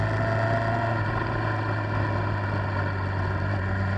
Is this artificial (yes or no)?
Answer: no